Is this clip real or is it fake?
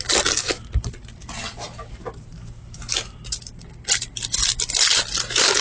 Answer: real